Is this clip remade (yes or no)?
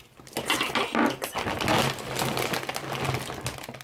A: no